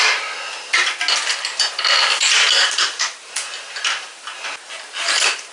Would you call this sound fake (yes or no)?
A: no